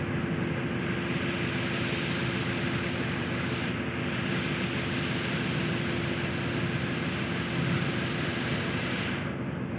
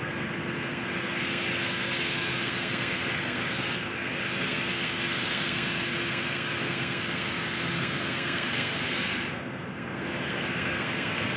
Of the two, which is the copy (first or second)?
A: second